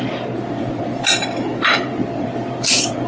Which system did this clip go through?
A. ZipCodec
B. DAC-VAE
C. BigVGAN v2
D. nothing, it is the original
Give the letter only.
C